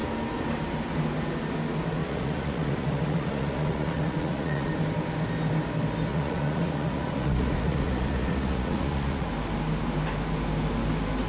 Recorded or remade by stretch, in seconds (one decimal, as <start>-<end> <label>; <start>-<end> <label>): 0.0-2.0 recorded; 2.0-4.7 remade; 4.7-6.1 recorded; 6.1-9.3 remade; 9.3-11.3 recorded